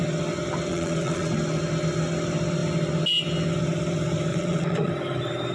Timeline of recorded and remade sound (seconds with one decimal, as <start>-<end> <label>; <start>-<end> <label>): 0.0-0.7 recorded; 0.7-1.3 remade; 1.3-4.3 recorded; 4.3-4.9 remade; 4.9-5.5 recorded